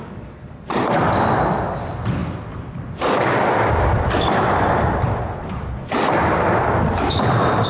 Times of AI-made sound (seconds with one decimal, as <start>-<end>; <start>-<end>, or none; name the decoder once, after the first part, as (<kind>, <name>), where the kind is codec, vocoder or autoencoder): 0.0-6.2 (vocoder, BigVGAN v2); 6.7-7.7